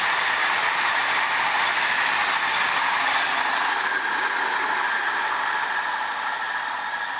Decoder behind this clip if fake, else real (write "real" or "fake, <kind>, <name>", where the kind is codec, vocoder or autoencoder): fake, vocoder, BigVGAN v2